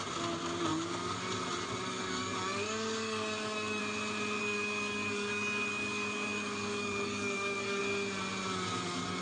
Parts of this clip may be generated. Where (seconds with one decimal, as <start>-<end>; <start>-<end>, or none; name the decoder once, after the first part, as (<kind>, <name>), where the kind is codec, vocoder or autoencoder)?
0.7-1.2 (codec, DAC); 1.8-3.8; 4.4-7.8